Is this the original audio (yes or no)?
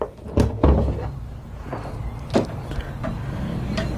yes